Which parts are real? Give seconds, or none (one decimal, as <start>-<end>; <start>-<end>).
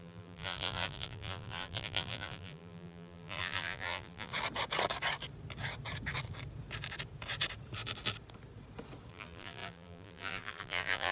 4.3-9.1